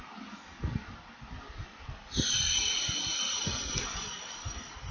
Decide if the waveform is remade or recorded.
remade